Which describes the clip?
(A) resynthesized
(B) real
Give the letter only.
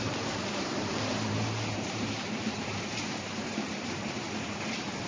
A